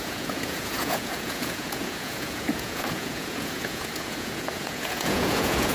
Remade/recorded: remade